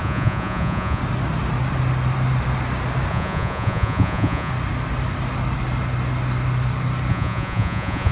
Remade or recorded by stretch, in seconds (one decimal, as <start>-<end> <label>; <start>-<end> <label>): 0.0-1.0 remade; 1.0-3.1 recorded; 3.1-4.5 remade; 4.5-7.1 recorded; 7.1-8.1 remade